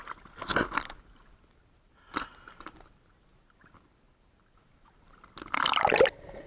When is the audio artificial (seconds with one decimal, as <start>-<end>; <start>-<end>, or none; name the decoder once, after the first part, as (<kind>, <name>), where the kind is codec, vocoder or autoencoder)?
none